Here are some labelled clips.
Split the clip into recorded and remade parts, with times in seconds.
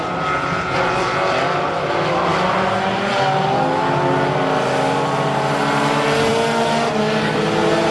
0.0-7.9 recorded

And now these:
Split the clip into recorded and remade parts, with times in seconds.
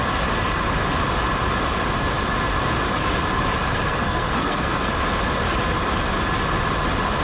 0.0-3.6 recorded; 3.6-4.9 remade; 4.9-7.2 recorded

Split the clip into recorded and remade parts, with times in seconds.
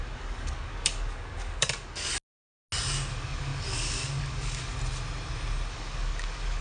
0.0-2.1 remade; 2.1-3.1 recorded; 3.1-4.7 remade; 4.7-5.7 recorded; 5.7-6.6 remade